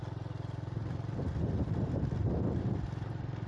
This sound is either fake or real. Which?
real